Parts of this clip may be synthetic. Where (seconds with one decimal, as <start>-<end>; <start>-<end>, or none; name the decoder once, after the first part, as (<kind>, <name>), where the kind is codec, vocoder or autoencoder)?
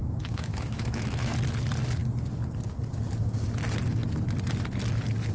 0.0-1.3 (autoencoder, DAC-VAE)